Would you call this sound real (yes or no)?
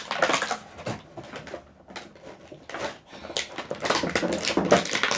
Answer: yes